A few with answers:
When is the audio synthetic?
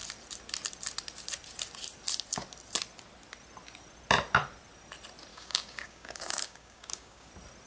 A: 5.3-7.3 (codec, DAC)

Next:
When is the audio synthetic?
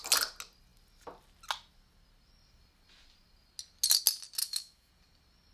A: 4.4-4.9 (autoencoder, DAC-VAE)